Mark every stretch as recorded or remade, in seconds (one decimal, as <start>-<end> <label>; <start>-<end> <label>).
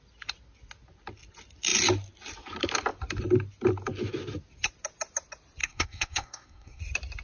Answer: 0.0-5.6 recorded; 5.6-6.8 remade; 6.8-7.2 recorded